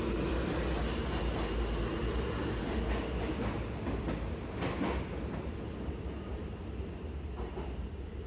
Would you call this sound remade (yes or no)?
no